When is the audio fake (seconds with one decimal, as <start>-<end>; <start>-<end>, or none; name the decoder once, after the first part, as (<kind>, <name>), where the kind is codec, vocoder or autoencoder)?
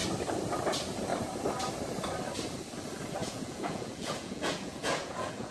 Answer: 3.2-5.5 (vocoder, Vocos)